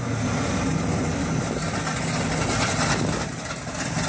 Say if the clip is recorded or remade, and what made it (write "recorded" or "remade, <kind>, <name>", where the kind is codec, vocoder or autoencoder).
recorded